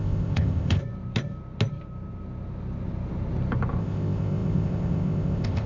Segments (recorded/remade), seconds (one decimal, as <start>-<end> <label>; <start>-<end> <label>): 0.0-0.8 remade; 0.8-3.8 recorded; 3.8-5.7 remade